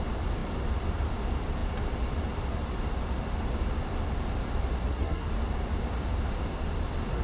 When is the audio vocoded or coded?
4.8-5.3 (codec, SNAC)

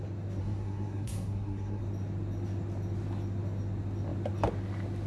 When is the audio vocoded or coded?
0.4-1.8 (codec, SNAC)

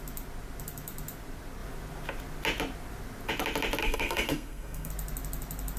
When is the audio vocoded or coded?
3.8-4.9 (codec, SNAC)

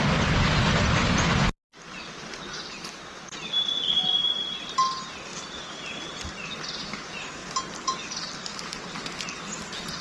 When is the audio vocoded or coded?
none